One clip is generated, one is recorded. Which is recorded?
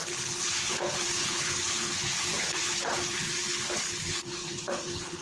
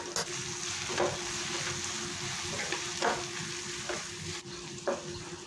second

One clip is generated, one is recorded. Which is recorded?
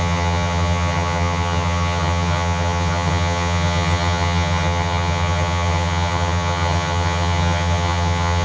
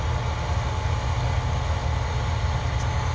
second